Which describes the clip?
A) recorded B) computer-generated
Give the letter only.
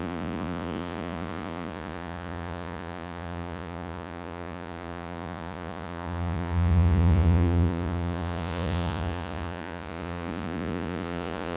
B